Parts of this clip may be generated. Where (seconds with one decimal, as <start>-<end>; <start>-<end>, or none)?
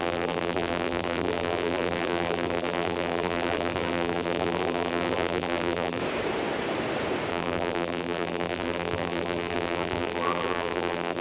0.0-6.0; 7.3-11.2